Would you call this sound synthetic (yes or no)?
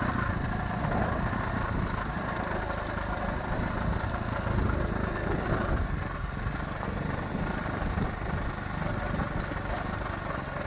no